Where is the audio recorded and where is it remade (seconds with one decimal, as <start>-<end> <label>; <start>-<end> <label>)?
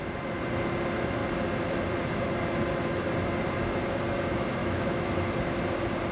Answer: 0.0-4.6 recorded; 4.6-5.2 remade; 5.2-6.1 recorded